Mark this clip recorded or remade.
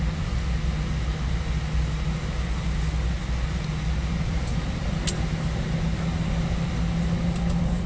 recorded